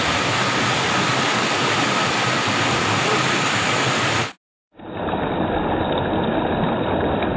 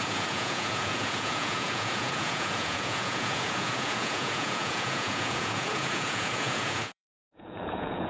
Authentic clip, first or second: first